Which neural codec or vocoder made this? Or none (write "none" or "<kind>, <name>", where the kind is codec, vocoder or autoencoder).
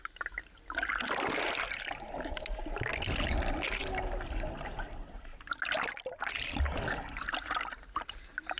none